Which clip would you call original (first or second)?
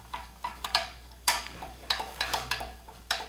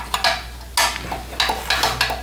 second